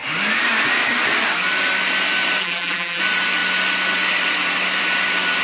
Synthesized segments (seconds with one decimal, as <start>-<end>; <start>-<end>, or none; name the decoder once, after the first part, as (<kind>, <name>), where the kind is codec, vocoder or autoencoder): 2.4-3.0 (vocoder, BigVGAN v2)